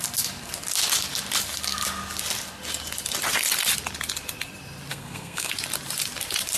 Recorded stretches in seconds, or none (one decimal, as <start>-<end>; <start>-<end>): 0.0-4.9; 5.5-6.6